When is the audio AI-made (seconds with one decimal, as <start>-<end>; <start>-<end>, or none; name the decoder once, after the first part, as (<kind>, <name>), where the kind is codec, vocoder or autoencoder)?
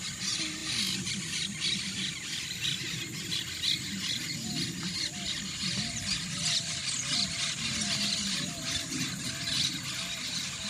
0.6-1.1 (vocoder, BigVGAN v2)